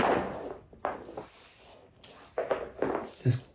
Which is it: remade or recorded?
recorded